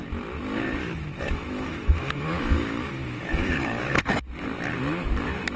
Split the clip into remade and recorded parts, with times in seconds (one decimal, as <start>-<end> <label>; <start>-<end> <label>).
0.0-0.8 recorded; 0.8-4.2 remade; 4.2-5.6 recorded